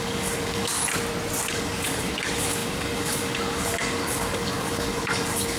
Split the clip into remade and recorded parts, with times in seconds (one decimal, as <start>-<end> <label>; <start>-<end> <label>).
0.0-0.8 remade; 0.8-1.5 recorded; 1.5-5.6 remade